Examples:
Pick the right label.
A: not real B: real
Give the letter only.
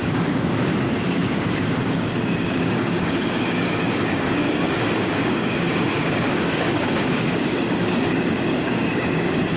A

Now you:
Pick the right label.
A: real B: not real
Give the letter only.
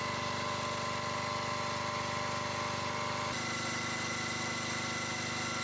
A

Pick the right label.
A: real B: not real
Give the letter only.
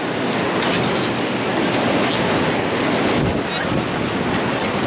A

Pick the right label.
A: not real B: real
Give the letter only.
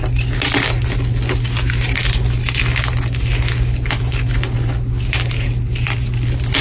B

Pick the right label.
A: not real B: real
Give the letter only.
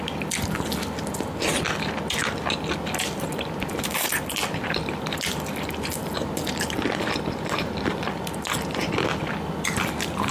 B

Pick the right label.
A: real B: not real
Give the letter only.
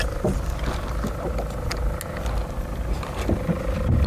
A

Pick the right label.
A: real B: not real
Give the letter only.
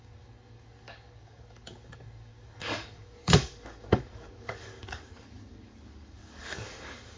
B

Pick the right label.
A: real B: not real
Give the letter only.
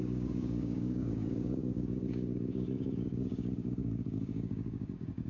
B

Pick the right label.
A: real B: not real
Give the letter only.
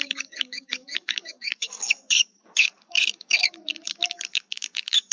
B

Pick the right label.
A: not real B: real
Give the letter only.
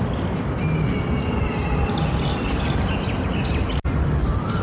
B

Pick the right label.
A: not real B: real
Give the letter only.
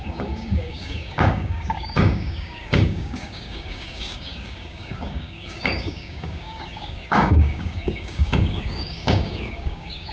A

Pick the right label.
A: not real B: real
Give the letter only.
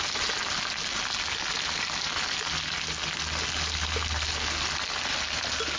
B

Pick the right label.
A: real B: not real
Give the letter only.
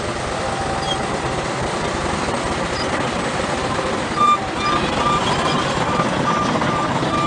A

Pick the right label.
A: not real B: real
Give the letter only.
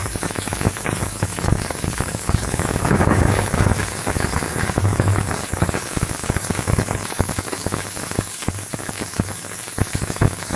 A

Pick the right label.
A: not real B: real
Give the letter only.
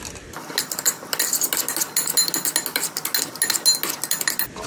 B